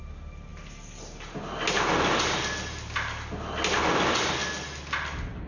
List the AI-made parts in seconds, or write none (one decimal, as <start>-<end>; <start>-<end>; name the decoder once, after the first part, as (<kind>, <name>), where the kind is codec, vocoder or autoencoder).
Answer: none